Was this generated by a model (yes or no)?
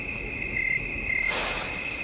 no